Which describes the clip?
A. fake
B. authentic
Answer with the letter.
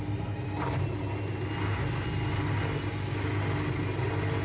B